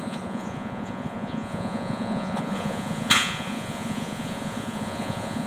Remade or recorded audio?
remade